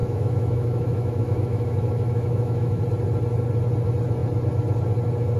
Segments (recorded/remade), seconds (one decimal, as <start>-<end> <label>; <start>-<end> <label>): 0.0-2.8 remade; 2.8-5.4 recorded